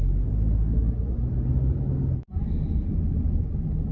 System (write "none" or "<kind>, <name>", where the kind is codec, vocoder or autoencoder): none